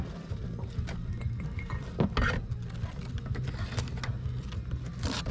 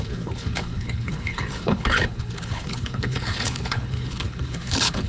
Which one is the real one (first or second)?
first